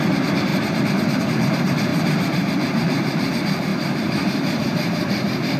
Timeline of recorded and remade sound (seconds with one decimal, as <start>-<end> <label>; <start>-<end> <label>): 0.0-0.5 recorded; 0.5-1.2 remade; 1.2-1.9 recorded; 1.9-3.3 remade; 3.3-3.7 recorded; 3.7-5.6 remade